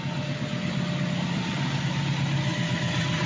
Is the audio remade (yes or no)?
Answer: no